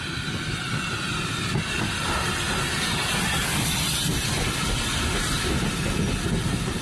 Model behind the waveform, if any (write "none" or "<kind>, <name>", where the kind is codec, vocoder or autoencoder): none